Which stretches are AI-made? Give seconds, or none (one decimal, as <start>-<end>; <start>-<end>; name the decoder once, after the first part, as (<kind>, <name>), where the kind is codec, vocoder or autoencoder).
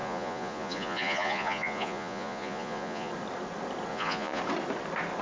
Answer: 0.0-3.1 (vocoder, Vocos); 3.9-4.4